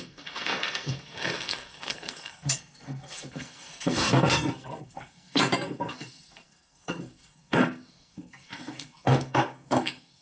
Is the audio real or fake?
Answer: fake